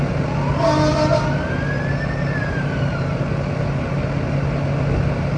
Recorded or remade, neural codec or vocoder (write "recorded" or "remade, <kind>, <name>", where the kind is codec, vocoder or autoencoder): recorded